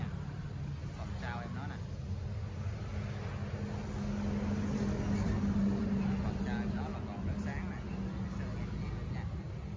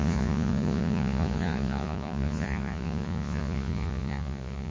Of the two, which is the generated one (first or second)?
second